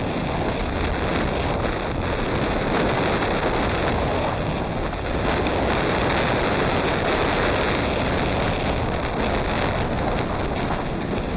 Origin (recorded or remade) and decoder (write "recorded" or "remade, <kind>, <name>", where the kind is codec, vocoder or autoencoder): recorded